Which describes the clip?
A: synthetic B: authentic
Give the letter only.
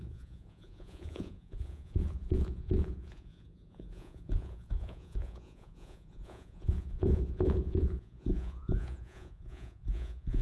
A